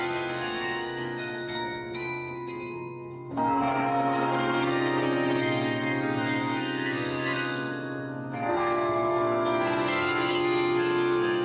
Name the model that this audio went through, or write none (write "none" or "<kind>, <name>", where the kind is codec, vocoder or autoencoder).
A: codec, SNAC